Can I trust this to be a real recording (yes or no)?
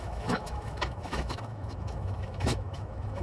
no